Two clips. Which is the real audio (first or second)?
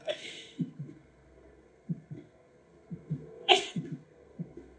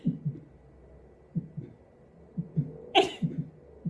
second